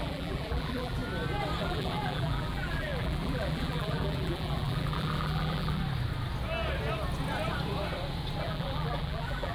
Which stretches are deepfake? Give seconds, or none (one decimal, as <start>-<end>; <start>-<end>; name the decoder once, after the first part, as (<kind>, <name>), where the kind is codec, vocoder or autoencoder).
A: 0.0-1.0 (vocoder, BigVGAN v2); 1.6-5.8; 8.4-9.5